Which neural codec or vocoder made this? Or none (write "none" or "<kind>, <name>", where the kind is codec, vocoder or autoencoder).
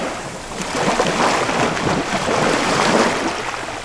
none